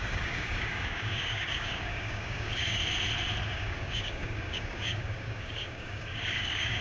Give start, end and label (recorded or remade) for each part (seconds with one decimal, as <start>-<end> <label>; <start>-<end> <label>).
0.0-2.8 remade; 2.8-3.5 recorded; 3.5-6.8 remade